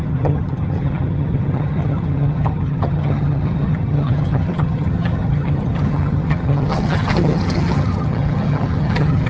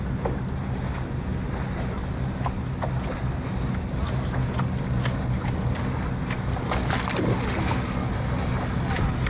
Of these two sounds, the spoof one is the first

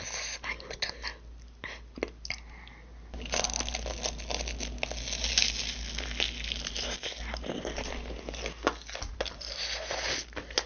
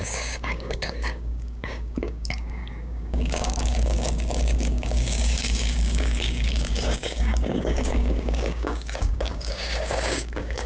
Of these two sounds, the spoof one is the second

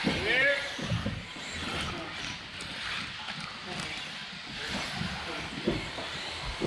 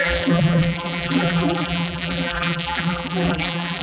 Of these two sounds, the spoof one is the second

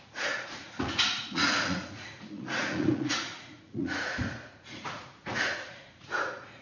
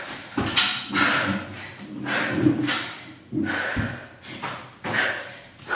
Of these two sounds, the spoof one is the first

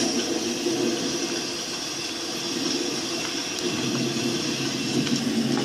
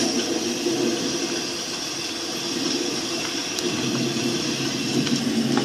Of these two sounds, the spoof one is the second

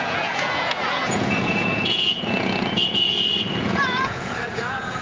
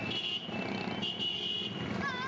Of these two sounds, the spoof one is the first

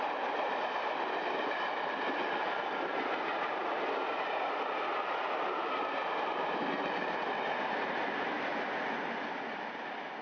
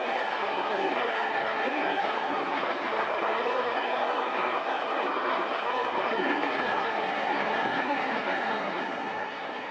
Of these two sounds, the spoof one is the second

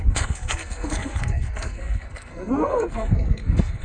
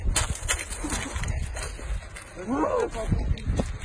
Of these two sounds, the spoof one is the first